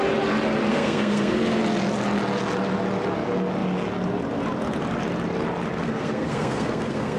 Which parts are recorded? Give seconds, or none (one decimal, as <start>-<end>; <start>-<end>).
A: 0.0-0.7; 1.6-5.8